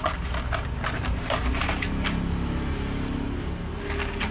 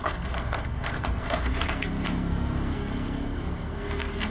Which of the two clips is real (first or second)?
first